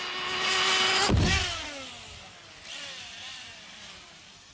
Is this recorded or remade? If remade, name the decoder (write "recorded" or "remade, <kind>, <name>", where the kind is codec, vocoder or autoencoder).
recorded